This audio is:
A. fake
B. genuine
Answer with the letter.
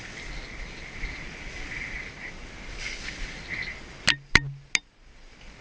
B